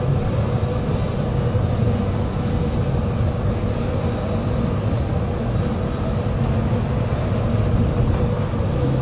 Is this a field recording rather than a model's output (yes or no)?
yes